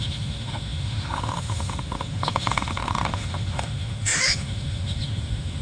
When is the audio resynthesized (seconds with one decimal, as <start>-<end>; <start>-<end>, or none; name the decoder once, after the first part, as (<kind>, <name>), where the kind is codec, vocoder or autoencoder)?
0.0-5.6 (autoencoder, DAC-VAE)

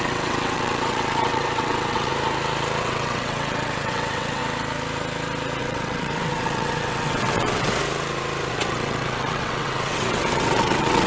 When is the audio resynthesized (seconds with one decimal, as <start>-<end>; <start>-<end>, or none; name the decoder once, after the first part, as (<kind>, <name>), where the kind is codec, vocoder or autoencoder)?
0.0-2.1 (vocoder, WaveNeXt); 2.8-4.4; 5.6-7.7; 8.5-11.1

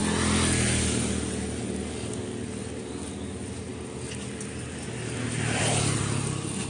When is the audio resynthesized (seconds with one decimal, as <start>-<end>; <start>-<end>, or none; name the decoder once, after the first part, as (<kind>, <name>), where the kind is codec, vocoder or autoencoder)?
none

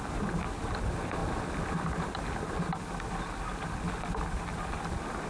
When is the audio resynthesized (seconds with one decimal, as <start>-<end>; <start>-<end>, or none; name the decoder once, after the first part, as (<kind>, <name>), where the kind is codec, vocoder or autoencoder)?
none

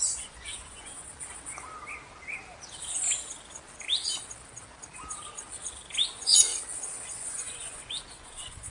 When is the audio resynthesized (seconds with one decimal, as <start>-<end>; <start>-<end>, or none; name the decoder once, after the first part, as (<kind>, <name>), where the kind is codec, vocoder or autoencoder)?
0.0-1.1 (vocoder, Vocos); 6.1-6.5; 7.1-8.7

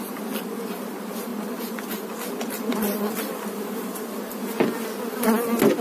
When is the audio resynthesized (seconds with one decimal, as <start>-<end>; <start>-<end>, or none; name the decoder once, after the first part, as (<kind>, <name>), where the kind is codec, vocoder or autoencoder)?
1.3-4.5 (vocoder, BigVGAN v2)

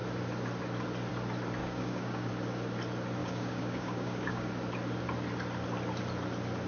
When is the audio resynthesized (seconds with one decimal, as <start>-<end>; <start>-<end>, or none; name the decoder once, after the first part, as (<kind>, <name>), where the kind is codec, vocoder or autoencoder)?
1.6-2.3 (codec, DAC); 3.2-4.5

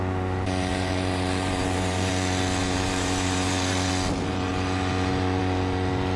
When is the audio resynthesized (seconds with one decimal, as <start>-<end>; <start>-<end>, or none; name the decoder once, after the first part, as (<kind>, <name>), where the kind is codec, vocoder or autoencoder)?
0.7-2.1 (vocoder, BigVGAN v2); 2.6-3.9